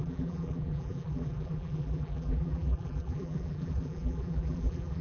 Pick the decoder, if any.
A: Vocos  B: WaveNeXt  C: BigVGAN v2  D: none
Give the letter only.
C